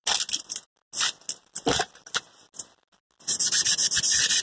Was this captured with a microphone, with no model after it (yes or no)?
yes